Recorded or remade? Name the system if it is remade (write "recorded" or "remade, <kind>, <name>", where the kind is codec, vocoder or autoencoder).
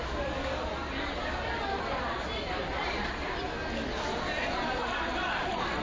recorded